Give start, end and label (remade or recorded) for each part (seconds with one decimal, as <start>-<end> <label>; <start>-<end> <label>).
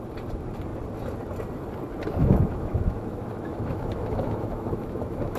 0.0-2.2 recorded; 2.2-5.4 remade